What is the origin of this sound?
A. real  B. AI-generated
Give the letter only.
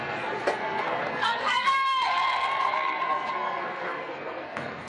B